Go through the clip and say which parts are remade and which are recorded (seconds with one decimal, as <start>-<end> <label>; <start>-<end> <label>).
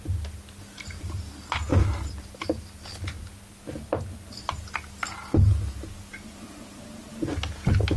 0.0-8.0 recorded